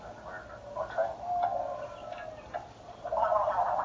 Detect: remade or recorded recorded